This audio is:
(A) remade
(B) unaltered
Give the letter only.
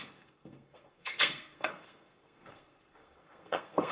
A